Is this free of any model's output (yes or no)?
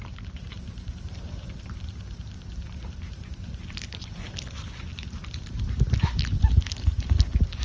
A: yes